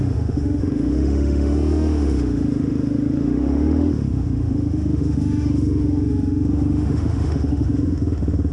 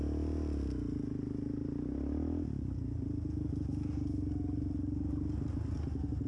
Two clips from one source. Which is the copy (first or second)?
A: first